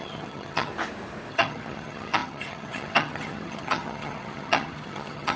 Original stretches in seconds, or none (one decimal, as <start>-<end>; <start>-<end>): 0.7-1.3